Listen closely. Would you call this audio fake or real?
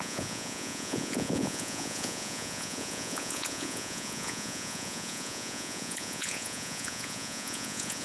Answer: fake